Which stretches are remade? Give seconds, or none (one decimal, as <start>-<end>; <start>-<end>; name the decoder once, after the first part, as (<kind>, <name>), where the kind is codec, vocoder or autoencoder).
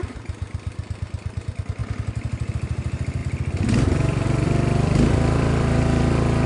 3.2-5.8 (vocoder, BigVGAN v2)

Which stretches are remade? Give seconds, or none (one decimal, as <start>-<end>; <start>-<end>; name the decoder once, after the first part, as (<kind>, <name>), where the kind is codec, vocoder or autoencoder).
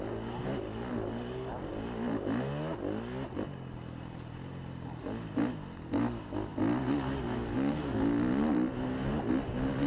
none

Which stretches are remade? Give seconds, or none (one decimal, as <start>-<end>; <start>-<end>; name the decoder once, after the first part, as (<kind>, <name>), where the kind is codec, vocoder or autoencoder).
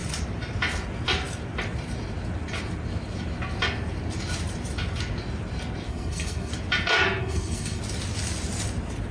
5.9-6.5 (codec, SNAC); 7.2-7.8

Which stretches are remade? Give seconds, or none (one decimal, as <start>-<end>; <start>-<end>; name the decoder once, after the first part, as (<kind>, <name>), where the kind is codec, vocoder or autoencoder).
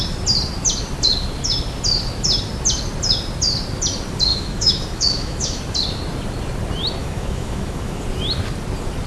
4.3-5.6 (autoencoder, DAC-VAE); 7.0-8.0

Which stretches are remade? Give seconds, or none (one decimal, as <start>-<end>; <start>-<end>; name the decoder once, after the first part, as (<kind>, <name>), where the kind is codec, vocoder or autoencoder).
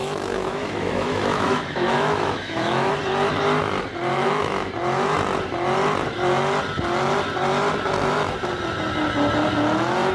0.0-2.9 (autoencoder, DAC-VAE); 4.1-4.7